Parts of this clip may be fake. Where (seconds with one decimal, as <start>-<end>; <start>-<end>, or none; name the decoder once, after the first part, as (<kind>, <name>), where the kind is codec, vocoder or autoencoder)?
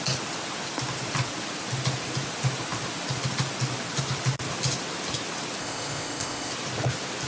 5.6-6.5 (codec, ZipCodec)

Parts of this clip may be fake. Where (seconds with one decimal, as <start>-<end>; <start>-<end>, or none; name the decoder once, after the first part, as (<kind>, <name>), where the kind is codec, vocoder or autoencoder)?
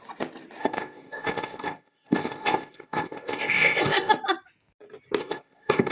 0.6-4.1 (codec, ZipCodec); 5.2-5.9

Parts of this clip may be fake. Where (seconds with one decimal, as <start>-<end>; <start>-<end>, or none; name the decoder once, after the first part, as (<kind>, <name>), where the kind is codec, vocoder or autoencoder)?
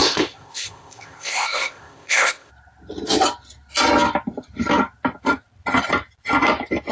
0.0-2.5 (codec, ZipCodec)